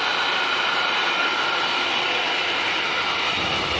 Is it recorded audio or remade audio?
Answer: recorded